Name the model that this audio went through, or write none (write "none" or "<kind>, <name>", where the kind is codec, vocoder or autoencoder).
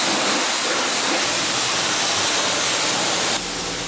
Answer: none